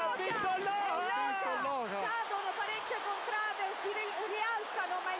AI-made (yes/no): no